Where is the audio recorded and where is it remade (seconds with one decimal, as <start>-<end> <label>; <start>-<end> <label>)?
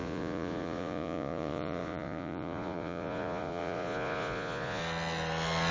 0.0-4.8 remade; 4.8-5.7 recorded